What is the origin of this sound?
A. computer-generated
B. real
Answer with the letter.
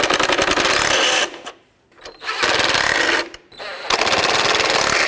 B